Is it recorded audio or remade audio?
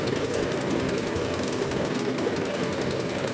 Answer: remade